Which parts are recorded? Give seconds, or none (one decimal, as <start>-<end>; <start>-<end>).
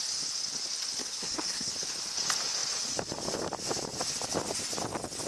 0.0-1.0; 1.7-5.3